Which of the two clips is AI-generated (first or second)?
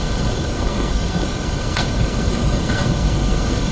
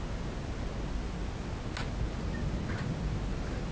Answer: first